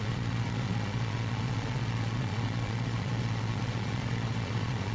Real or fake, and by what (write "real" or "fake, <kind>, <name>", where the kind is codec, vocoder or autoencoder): fake, vocoder, Vocos